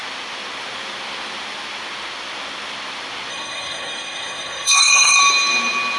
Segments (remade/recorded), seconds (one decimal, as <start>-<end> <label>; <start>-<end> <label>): 0.0-3.3 recorded; 3.3-5.2 remade; 5.2-6.0 recorded